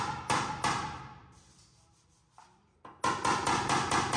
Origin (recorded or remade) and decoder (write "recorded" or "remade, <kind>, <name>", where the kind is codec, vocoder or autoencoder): recorded